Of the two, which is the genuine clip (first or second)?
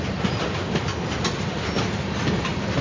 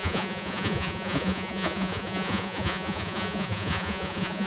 first